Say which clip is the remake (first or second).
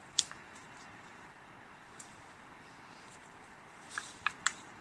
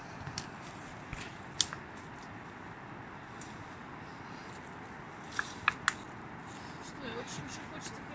first